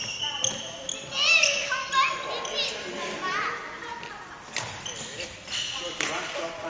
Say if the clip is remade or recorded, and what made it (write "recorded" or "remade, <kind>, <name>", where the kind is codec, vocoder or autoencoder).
recorded